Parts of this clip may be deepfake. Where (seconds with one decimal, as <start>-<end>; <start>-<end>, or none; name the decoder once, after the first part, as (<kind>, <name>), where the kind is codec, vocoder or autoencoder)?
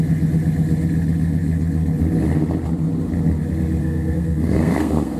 3.8-5.2 (codec, SNAC)